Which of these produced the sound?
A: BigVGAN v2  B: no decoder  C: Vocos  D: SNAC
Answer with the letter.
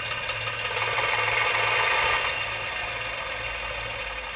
B